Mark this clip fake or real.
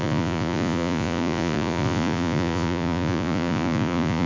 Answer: fake